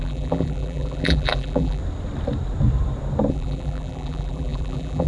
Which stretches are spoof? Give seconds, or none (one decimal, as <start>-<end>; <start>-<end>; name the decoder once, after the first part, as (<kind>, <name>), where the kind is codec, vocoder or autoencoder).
0.0-1.8 (vocoder, BigVGAN v2); 3.3-5.1